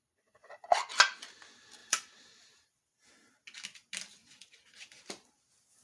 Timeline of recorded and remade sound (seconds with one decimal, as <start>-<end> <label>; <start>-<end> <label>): 0.0-1.8 recorded; 1.8-3.1 remade; 3.1-4.2 recorded; 4.2-5.3 remade; 5.3-5.8 recorded